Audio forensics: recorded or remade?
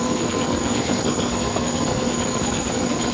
remade